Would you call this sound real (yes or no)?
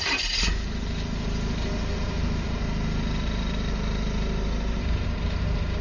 no